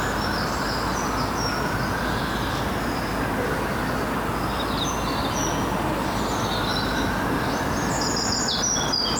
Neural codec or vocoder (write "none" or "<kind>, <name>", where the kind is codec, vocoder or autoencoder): none